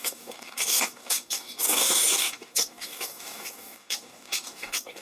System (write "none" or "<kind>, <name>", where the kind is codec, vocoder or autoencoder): codec, DAC